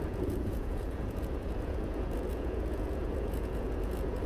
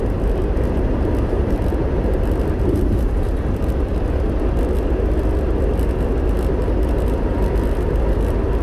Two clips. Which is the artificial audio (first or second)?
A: first